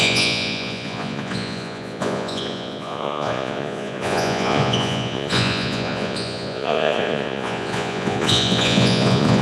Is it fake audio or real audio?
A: fake